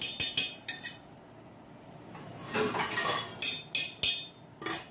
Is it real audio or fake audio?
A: real